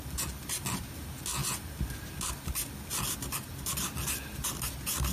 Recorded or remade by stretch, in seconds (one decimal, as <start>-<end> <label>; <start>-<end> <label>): 0.0-5.1 recorded